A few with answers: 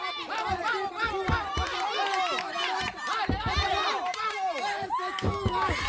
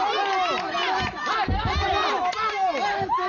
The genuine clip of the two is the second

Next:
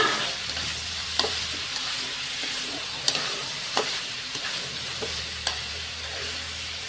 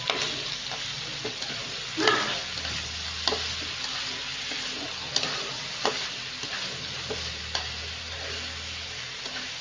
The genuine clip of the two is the second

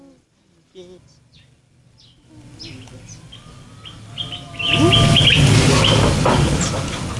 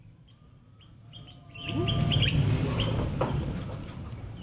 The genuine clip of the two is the first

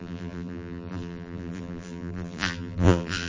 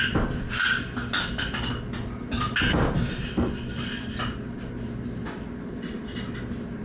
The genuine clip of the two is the second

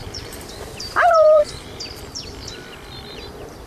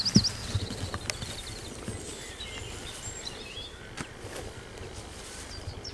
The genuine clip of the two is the second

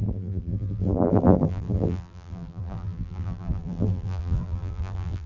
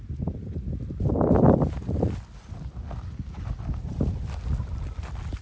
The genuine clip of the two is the second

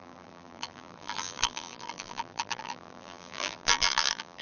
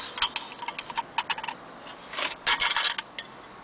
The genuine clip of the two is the second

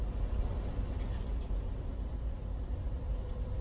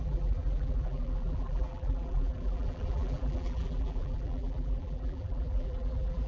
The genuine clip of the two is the first